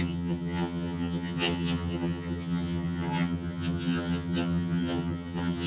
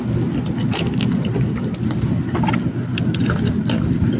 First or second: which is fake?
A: first